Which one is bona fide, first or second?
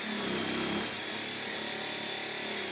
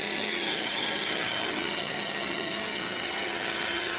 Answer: first